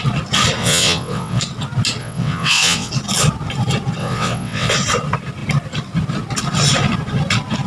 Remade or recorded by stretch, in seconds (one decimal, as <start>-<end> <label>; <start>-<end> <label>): 0.0-0.6 recorded; 0.6-1.4 remade; 1.4-2.0 recorded; 2.0-2.9 remade; 2.9-4.0 recorded; 4.0-4.7 remade; 4.7-7.7 recorded

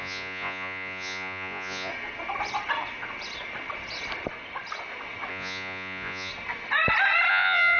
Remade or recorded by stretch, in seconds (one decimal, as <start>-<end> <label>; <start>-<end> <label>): 0.0-1.9 remade; 1.9-5.3 recorded; 5.3-6.3 remade; 6.3-7.3 recorded; 7.3-7.8 remade

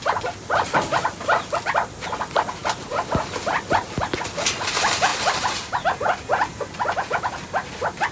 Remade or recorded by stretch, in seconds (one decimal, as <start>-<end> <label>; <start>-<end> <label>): 0.0-8.1 recorded